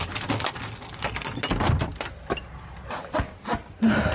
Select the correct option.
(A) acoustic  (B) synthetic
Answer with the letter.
A